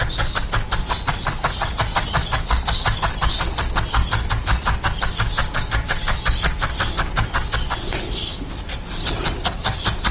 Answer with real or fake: real